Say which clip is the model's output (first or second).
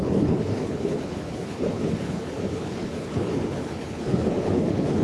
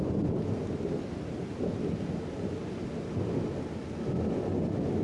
first